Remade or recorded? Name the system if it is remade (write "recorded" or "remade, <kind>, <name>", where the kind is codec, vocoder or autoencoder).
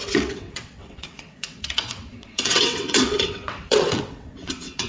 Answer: remade, vocoder, WaveNeXt